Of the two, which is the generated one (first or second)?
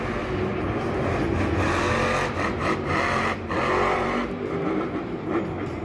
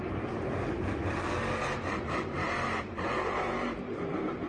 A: second